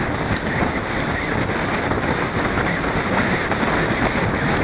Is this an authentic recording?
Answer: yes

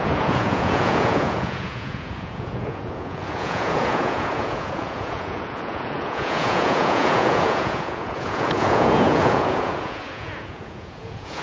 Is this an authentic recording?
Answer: no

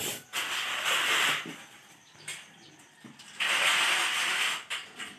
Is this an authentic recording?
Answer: yes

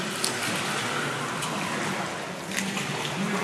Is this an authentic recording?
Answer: yes